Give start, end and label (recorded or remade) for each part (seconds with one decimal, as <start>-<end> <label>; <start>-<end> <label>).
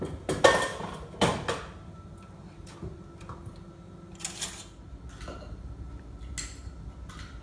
0.0-7.4 recorded